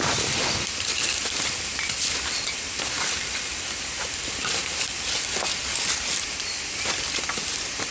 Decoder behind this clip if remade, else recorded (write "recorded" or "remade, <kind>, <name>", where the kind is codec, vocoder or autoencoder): remade, vocoder, BigVGAN v2